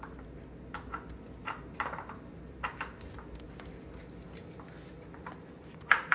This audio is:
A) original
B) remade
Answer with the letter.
A